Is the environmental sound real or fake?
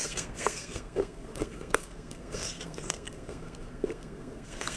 fake